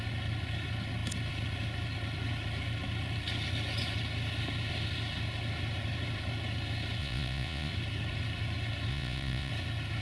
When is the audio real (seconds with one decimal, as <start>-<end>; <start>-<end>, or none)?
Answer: 0.0-7.0; 7.7-8.9; 9.5-10.0